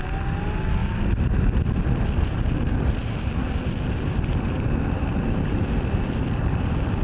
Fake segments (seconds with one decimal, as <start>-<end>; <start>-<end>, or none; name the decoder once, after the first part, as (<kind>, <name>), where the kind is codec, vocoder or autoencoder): none